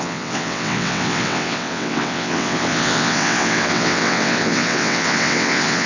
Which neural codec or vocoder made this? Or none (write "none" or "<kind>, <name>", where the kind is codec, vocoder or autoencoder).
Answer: vocoder, WaveNeXt